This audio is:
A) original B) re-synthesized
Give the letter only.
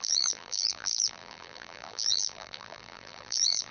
B